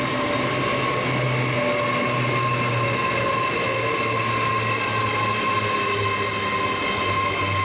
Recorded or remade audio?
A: recorded